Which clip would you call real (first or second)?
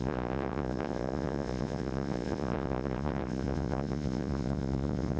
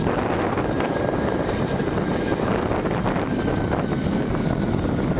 second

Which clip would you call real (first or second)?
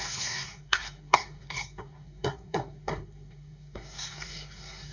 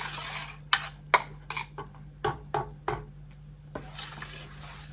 second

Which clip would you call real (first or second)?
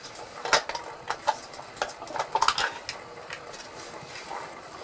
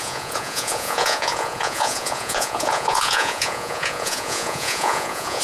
first